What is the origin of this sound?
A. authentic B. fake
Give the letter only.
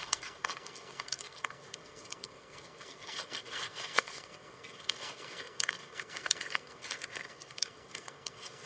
B